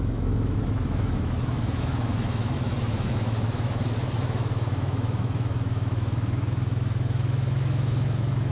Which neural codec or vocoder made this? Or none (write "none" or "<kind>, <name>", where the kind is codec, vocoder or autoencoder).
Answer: autoencoder, DAC-VAE